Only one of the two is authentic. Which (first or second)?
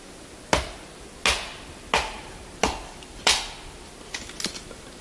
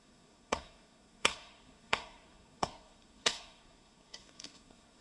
first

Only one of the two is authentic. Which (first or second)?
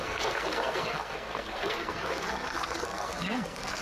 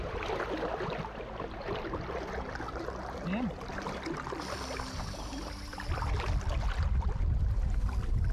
second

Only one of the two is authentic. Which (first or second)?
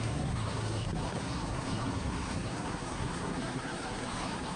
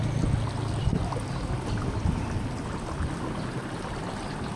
second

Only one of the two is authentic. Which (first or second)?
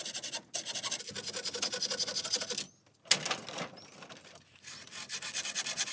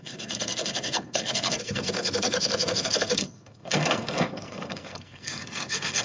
first